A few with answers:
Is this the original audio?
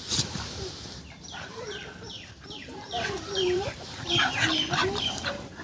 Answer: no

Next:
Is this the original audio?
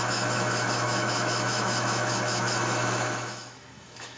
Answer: no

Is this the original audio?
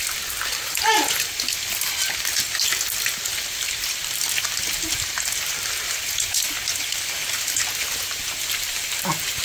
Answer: no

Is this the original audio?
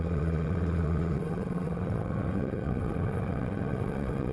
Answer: no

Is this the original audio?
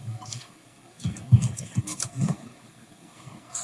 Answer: no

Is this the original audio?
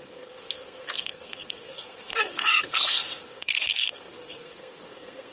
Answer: no